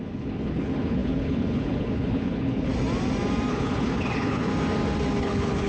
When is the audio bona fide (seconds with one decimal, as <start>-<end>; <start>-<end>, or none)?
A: 2.7-3.5; 4.5-5.2